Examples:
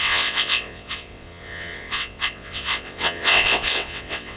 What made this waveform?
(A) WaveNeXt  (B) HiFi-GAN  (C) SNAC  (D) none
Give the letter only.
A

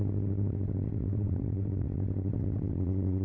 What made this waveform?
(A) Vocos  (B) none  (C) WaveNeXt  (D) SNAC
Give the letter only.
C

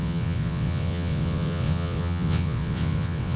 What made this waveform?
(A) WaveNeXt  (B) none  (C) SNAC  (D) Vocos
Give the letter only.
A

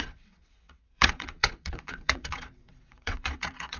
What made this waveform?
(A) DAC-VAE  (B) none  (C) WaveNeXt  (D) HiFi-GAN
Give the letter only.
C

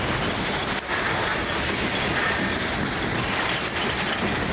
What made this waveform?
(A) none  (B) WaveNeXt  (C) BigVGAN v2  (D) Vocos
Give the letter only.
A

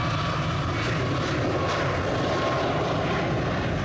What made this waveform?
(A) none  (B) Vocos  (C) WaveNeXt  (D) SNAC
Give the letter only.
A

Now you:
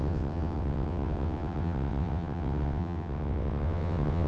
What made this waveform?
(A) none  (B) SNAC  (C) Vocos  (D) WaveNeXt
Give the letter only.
D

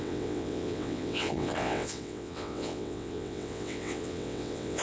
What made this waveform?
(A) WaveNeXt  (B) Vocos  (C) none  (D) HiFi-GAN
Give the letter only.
A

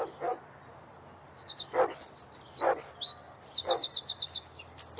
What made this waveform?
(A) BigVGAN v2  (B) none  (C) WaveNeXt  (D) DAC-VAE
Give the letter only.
B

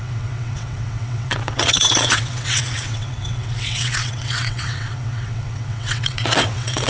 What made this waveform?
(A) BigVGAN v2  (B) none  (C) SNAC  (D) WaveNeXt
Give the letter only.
D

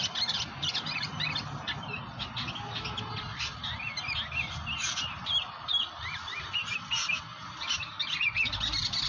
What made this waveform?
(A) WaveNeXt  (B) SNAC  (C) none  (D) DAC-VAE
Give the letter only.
C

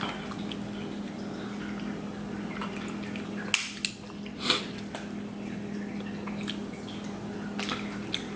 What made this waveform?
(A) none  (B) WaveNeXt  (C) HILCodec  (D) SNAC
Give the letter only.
A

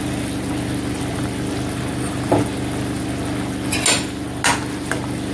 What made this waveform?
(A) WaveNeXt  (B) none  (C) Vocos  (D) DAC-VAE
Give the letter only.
B